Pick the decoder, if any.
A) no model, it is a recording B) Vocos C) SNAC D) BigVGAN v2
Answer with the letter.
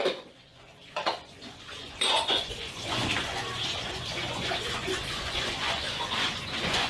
B